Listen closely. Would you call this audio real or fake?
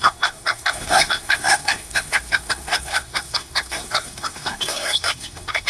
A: fake